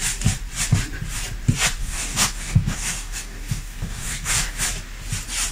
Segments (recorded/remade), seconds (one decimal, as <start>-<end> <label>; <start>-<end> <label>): 0.0-1.8 recorded; 1.8-4.6 remade; 4.6-5.5 recorded